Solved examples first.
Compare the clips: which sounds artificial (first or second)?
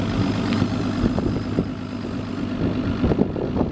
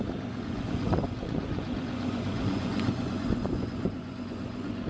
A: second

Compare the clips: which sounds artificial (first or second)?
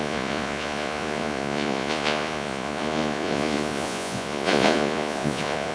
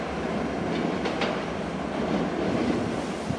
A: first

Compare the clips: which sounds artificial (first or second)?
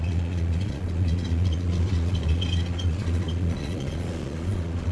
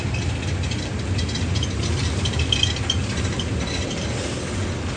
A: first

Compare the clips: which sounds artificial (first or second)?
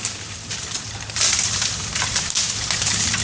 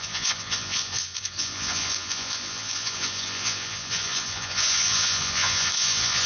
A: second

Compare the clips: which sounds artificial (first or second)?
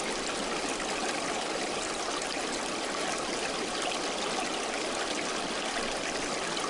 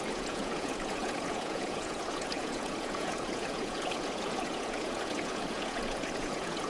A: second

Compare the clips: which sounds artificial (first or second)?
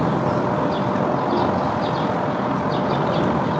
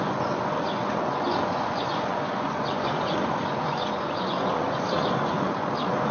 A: second